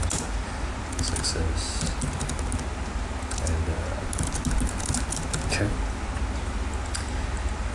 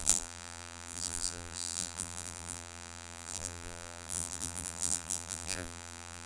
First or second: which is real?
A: first